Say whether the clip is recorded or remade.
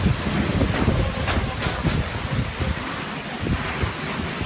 recorded